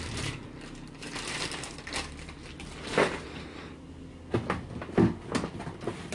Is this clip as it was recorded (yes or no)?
yes